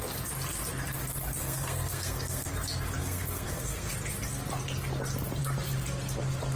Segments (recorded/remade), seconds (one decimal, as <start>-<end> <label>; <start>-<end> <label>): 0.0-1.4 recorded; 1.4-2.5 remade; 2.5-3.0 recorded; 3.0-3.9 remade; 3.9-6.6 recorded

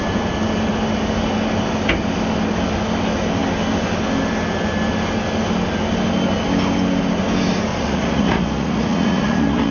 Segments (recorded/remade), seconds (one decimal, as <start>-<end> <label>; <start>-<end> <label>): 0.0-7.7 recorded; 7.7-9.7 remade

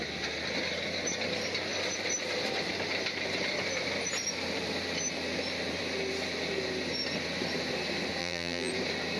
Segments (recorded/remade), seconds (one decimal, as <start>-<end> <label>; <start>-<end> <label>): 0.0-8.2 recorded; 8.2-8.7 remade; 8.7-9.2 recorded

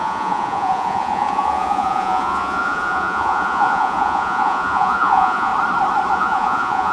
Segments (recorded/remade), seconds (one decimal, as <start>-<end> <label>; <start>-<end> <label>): 0.0-5.5 remade; 5.5-6.1 recorded; 6.1-6.9 remade

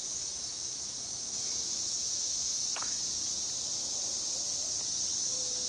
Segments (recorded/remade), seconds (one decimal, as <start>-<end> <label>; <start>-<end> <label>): 0.0-3.0 remade; 3.0-5.7 recorded